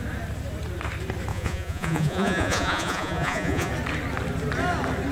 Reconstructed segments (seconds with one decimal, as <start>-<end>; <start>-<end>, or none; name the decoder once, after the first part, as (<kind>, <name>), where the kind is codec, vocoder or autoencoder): 1.3-3.7 (vocoder, Vocos)

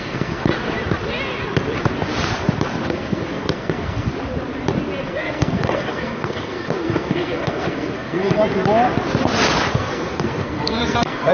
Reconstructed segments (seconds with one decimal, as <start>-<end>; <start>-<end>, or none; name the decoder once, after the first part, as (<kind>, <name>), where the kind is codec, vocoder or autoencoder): 0.0-0.5 (codec, SNAC); 2.9-4.1; 5.0-8.4; 9.7-11.3

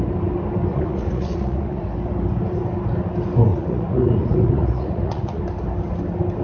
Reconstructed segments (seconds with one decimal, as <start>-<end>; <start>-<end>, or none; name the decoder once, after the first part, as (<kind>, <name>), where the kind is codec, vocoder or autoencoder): 0.7-1.8 (vocoder, Vocos); 3.5-5.4

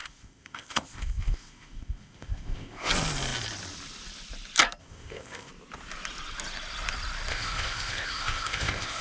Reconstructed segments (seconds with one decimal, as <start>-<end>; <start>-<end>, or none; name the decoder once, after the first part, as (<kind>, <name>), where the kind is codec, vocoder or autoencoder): 0.0-2.9 (codec, ZipCodec); 4.8-5.5; 7.3-9.0

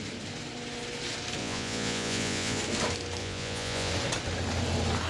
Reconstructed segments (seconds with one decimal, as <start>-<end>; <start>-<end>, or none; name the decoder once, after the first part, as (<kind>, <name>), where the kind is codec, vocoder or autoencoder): 1.4-2.6 (vocoder, Vocos); 3.2-3.9

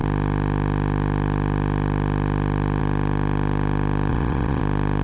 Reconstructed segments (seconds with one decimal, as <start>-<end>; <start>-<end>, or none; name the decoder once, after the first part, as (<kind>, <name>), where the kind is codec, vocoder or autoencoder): 4.1-4.6 (vocoder, WaveNeXt)

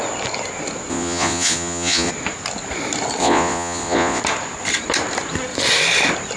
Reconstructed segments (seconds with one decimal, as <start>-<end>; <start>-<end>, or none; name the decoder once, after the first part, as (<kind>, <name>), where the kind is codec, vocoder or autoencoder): 0.9-2.1 (vocoder, Vocos); 3.2-4.2